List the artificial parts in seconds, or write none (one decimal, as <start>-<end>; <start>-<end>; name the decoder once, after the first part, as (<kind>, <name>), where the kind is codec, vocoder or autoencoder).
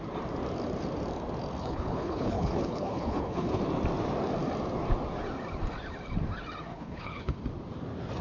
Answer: 1.6-3.6 (codec, HILCodec); 6.7-7.4